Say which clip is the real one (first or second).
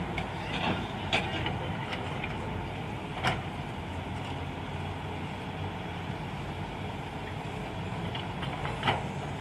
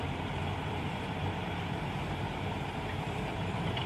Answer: first